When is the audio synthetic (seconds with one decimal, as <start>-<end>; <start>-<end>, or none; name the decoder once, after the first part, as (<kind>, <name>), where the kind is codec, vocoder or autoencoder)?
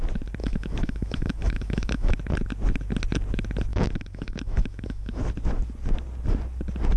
0.4-2.1 (autoencoder, DAC-VAE); 3.7-5.2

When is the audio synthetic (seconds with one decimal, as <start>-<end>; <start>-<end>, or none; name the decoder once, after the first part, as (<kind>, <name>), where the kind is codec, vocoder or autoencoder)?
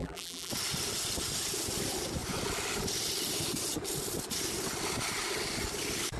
0.0-0.5 (vocoder, BigVGAN v2)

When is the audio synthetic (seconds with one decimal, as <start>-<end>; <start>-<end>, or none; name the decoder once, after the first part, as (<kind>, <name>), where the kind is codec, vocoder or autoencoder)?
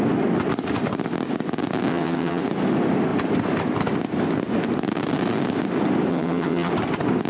1.9-2.4 (vocoder, HiFi-GAN); 6.1-6.7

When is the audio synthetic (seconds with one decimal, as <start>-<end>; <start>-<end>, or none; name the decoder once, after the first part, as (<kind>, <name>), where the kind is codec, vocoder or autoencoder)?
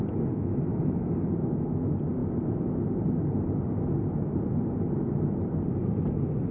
none